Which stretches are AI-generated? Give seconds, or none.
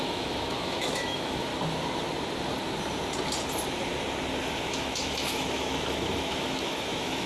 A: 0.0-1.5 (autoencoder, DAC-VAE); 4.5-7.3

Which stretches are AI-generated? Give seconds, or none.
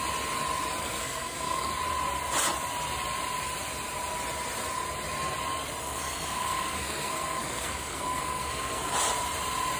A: 0.8-1.7 (codec, SNAC); 5.8-8.9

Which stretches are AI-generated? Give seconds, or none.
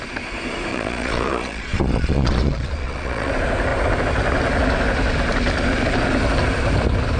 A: 0.7-3.3 (vocoder, Vocos)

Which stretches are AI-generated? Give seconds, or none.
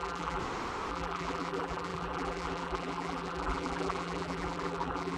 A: 0.0-0.4 (vocoder, BigVGAN v2); 0.9-5.2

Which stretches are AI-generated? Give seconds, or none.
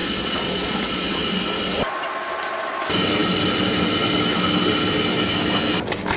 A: 0.0-1.3 (vocoder, Vocos)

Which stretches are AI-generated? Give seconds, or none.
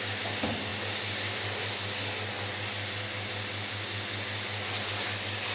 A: none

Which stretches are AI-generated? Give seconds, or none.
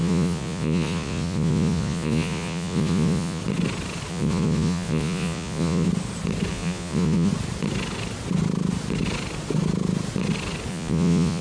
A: 0.0-3.4 (vocoder, Vocos); 4.1-5.9; 6.5-7.3; 10.7-11.4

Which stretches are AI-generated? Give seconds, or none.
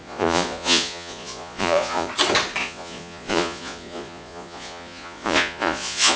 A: 0.0-2.1 (vocoder, Vocos); 2.6-6.2